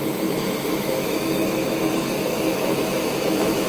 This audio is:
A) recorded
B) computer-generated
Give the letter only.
B